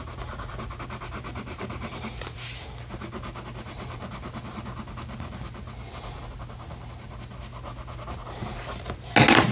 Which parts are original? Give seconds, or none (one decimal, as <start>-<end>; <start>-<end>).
0.0-9.5